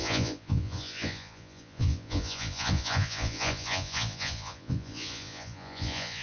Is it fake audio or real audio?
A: fake